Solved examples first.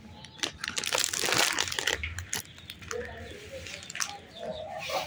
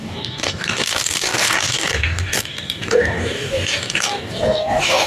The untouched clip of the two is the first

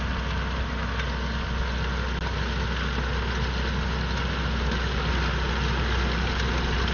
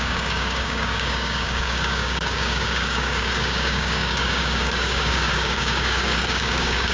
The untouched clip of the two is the first